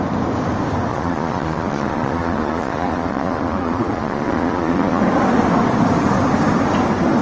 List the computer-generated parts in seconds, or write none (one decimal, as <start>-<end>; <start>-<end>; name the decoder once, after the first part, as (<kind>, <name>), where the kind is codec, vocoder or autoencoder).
0.9-5.0 (vocoder, Vocos)